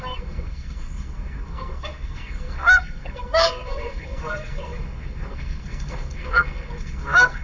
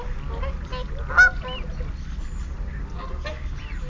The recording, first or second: second